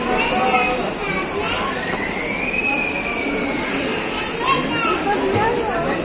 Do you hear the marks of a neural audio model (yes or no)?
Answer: no